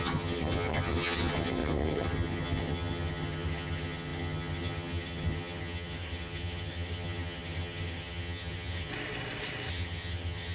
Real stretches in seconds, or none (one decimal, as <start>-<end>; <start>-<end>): 8.9-9.7